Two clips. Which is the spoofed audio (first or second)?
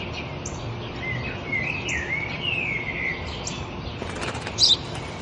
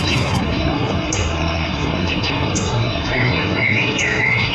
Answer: second